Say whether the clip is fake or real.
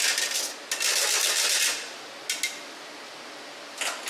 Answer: real